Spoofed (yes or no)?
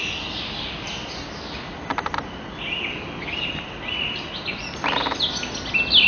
no